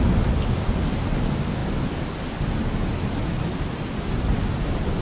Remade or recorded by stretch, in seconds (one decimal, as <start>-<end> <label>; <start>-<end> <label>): 0.0-5.0 recorded